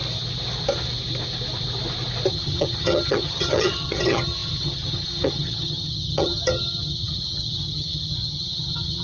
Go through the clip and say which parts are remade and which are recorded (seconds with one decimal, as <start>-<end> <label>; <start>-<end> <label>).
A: 0.0-2.3 recorded; 2.3-9.0 remade